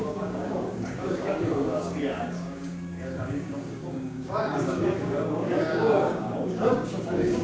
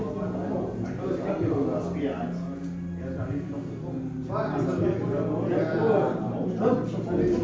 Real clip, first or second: second